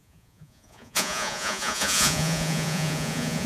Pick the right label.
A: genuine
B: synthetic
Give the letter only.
B